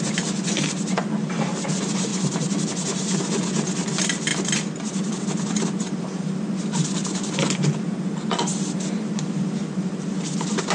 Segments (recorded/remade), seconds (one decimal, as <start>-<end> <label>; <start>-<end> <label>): 0.0-2.1 recorded; 2.1-3.2 remade; 3.2-10.7 recorded